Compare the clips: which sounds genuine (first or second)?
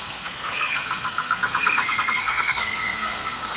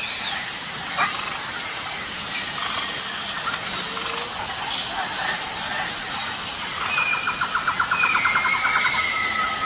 second